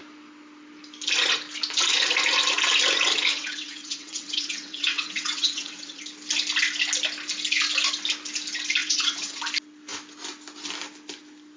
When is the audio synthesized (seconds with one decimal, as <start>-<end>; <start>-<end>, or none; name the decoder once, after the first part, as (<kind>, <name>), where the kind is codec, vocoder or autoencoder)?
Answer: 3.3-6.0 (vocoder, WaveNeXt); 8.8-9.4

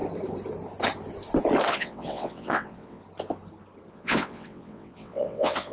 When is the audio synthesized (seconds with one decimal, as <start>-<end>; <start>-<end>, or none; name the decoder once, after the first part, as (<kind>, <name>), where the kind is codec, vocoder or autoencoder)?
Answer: 1.7-3.0 (vocoder, WaveNeXt); 3.9-5.7

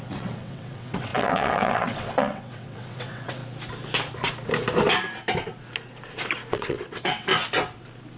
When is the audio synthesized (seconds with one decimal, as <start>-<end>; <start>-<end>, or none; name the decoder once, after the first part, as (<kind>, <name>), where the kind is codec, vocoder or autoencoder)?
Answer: 0.0-3.4 (vocoder, WaveNeXt); 6.5-7.3